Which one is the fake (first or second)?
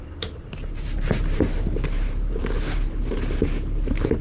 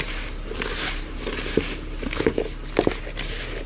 first